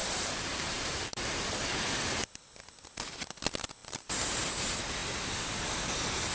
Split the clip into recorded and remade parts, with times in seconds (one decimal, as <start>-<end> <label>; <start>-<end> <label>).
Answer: 0.0-1.5 remade; 1.5-3.8 recorded; 3.8-4.4 remade; 4.4-6.3 recorded